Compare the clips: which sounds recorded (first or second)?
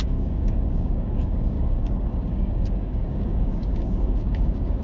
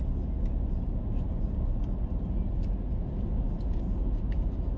second